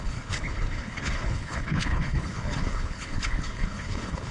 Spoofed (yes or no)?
yes